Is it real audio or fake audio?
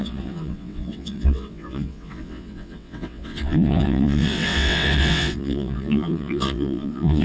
fake